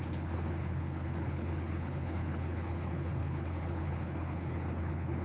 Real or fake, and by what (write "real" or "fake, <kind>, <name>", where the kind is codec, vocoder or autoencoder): fake, codec, HILCodec